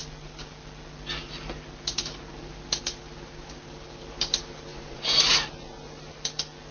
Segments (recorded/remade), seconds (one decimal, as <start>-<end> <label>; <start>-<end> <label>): 0.0-4.7 recorded; 4.7-5.3 remade; 5.3-6.7 recorded